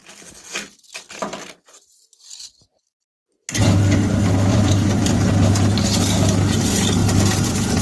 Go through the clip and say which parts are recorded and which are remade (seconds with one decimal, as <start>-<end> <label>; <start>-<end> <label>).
0.0-4.5 recorded; 4.5-5.3 remade; 5.3-7.0 recorded; 7.0-7.8 remade